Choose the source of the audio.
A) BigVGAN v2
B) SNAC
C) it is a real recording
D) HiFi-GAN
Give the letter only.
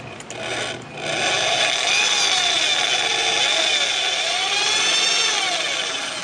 C